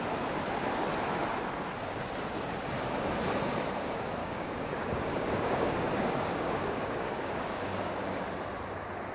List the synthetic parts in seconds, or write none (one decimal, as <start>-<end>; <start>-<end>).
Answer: 4.2-8.2